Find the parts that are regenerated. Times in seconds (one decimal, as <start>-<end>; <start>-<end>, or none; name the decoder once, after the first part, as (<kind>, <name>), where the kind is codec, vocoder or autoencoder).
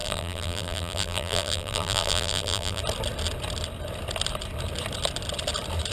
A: 0.0-2.8 (vocoder, BigVGAN v2)